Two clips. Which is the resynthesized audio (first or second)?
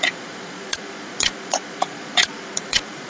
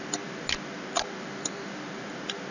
first